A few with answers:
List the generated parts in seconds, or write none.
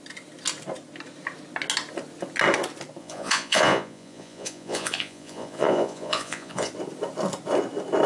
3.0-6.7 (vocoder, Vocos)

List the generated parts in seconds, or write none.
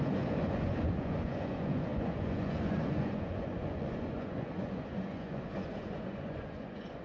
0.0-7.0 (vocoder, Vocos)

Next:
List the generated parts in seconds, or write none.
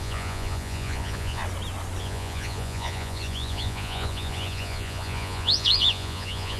0.0-1.4 (vocoder, Vocos); 2.0-6.6